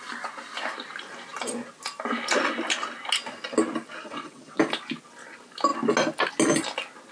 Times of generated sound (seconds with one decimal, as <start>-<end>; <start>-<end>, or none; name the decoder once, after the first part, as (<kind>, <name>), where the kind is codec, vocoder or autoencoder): 4.0-4.6 (vocoder, WaveNeXt)

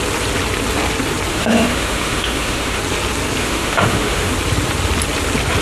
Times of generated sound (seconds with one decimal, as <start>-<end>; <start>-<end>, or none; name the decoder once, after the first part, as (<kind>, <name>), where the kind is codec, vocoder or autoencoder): 1.3-2.8 (autoencoder, DAC-VAE); 3.4-4.3

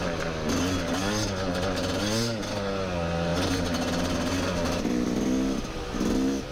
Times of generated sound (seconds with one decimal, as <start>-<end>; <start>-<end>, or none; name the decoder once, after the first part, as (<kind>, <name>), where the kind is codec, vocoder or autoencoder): none

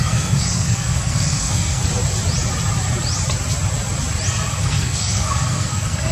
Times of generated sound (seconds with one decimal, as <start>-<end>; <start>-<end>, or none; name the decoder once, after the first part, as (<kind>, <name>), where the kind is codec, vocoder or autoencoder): 0.0-1.8 (codec, SNAC); 4.6-6.1

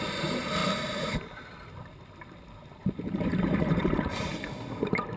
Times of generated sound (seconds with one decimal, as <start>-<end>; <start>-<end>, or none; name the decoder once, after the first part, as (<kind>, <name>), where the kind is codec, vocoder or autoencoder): 0.6-1.4 (vocoder, BigVGAN v2); 2.8-4.5